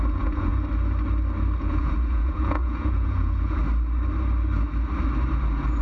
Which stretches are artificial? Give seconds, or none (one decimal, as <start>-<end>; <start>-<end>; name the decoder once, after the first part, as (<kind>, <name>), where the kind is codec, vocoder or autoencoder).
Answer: 0.0-0.5 (vocoder, Vocos); 1.6-3.6